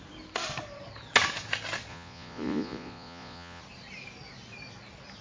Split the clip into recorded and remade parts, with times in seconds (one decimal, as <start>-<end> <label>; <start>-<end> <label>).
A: 0.0-1.9 recorded; 1.9-3.6 remade; 3.6-5.2 recorded